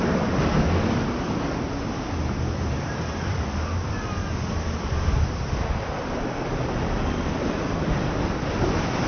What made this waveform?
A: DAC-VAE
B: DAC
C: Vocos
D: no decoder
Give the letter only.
D